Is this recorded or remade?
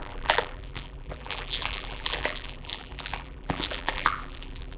remade